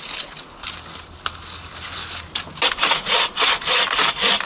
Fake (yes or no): no